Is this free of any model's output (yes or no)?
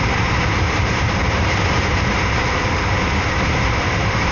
no